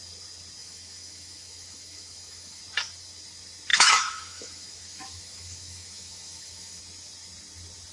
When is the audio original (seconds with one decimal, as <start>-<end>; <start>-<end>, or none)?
0.0-0.6; 2.6-3.7; 6.8-7.9